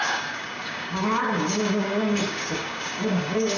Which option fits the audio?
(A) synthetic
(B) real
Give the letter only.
A